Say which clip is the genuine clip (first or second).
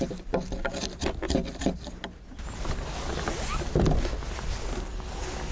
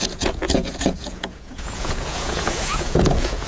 first